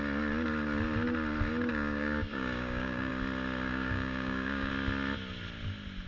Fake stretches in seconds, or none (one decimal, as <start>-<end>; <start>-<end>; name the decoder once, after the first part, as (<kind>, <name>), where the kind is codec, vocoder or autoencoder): 1.7-3.1 (codec, DAC); 3.7-4.7